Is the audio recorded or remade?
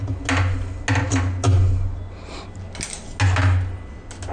recorded